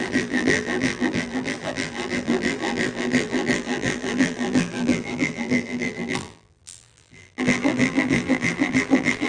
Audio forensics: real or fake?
fake